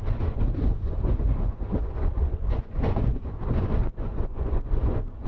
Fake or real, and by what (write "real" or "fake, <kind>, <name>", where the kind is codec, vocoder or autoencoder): fake, vocoder, Vocos